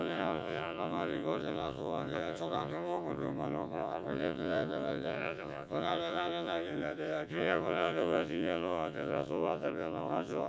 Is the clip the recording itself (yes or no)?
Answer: no